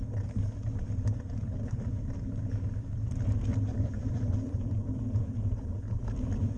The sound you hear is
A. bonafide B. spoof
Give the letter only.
B